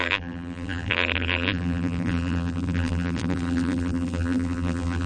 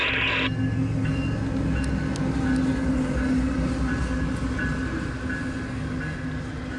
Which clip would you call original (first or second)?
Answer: second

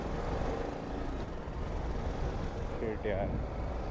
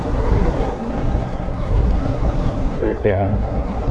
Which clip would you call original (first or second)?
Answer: first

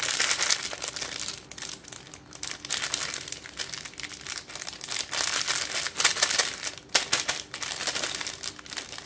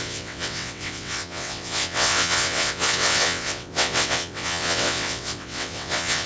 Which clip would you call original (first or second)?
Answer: first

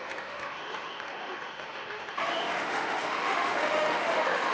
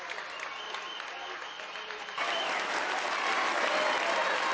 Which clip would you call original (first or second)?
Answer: second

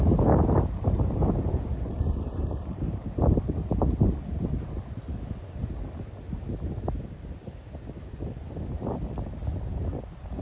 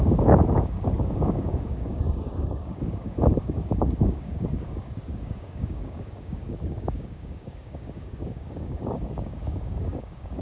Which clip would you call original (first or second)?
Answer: first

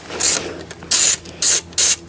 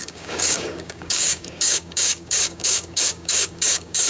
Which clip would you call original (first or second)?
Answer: first